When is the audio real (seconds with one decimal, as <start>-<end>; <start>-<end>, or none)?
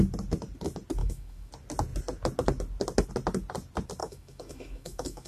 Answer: 0.0-1.0; 1.5-4.0